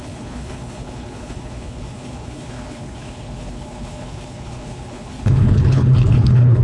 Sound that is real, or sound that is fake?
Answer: fake